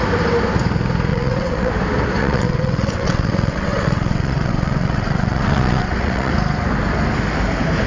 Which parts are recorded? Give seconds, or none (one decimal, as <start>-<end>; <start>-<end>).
0.0-1.1; 1.7-2.2; 6.3-7.9